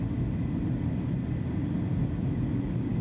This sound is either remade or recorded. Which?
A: remade